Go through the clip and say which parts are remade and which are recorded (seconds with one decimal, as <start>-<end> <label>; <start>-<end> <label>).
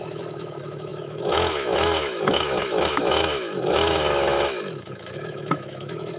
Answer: 0.0-6.2 remade